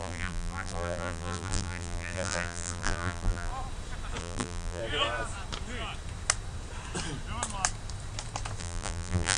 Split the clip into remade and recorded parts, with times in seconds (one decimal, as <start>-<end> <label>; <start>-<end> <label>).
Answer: 0.0-3.5 remade; 3.5-4.2 recorded; 4.2-4.8 remade; 4.8-8.6 recorded; 8.6-9.4 remade